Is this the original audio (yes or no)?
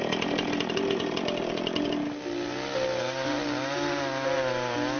yes